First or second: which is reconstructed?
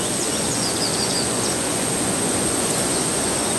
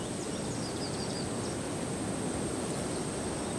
first